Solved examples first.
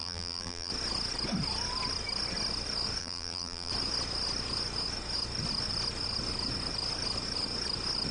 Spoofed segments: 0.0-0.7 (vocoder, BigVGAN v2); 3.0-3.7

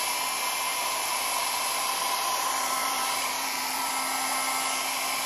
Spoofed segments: 0.7-3.9 (vocoder, BigVGAN v2)

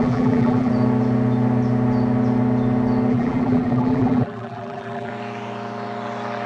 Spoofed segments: 0.0-0.7 (vocoder, BigVGAN v2); 3.1-5.1

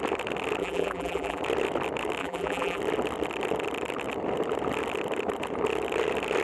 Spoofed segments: 0.6-1.4 (vocoder, BigVGAN v2); 2.2-2.8

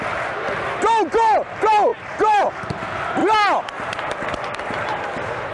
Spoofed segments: 1.9-2.5 (vocoder, BigVGAN v2)

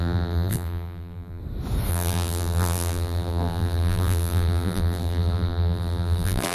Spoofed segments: 0.0-1.4 (vocoder, BigVGAN v2); 1.9-6.5